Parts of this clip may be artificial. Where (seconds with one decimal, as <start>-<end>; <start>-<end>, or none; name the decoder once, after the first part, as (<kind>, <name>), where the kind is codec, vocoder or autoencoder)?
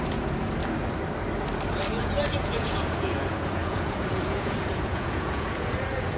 0.0-0.6 (vocoder, Vocos); 2.0-6.2